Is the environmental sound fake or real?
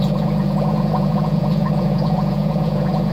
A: fake